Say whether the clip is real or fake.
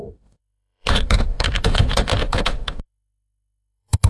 fake